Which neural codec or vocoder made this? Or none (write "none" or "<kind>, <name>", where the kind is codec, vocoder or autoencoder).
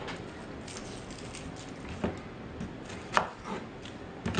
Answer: none